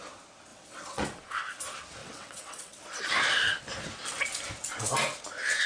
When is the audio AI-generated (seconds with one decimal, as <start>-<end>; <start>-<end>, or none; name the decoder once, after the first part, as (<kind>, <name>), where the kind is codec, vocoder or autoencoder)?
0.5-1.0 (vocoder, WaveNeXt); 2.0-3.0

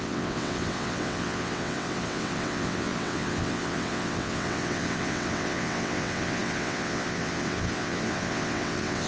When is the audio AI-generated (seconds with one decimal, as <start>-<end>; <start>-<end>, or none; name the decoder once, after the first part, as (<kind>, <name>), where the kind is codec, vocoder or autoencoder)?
0.0-9.1 (vocoder, WaveNeXt)

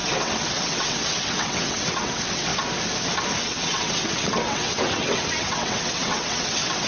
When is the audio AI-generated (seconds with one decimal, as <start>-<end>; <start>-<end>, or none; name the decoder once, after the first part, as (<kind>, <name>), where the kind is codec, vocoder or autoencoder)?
0.0-2.5 (vocoder, WaveNeXt); 3.4-6.9

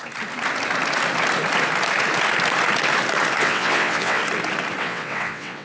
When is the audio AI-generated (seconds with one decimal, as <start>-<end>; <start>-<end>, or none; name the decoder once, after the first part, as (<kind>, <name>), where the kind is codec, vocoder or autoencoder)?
3.4-4.2 (vocoder, WaveNeXt); 4.8-5.6

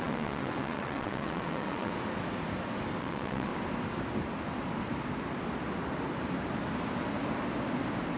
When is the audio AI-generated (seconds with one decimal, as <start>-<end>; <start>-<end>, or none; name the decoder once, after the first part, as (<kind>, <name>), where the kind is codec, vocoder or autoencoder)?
0.0-1.9 (vocoder, WaveNeXt); 3.0-3.5

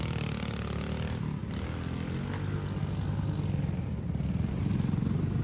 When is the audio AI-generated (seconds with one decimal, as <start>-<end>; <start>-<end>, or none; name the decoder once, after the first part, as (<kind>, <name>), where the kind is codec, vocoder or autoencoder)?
none

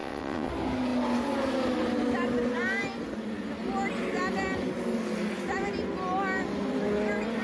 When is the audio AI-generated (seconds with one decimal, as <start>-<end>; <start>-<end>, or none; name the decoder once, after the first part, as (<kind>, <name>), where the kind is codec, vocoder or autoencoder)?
0.0-0.5 (vocoder, WaveNeXt)